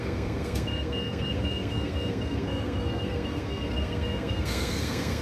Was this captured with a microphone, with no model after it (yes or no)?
no